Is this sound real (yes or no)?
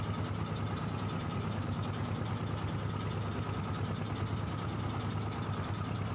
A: yes